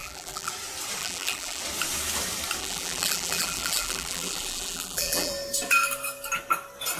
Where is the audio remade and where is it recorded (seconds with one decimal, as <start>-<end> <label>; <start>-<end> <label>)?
0.0-0.5 remade; 0.5-1.0 recorded; 1.0-1.6 remade; 1.6-2.6 recorded; 2.6-5.3 remade; 5.3-7.0 recorded